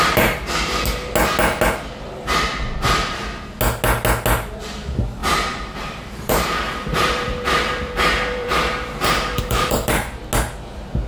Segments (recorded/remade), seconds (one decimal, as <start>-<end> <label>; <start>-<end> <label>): 0.0-5.2 recorded; 5.2-10.2 remade; 10.2-11.1 recorded